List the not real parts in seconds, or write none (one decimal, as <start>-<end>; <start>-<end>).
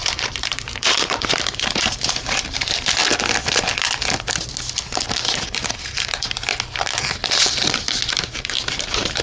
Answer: 0.0-3.0; 4.9-6.5; 8.1-9.2